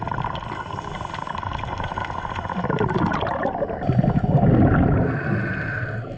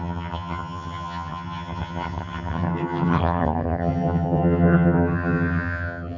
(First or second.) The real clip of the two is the first